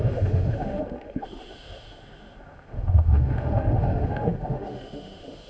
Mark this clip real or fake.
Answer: fake